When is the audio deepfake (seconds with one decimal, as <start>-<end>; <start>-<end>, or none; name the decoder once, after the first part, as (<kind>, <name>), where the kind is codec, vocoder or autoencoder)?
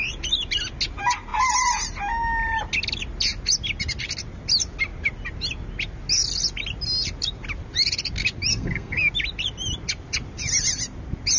8.5-9.1 (codec, SNAC)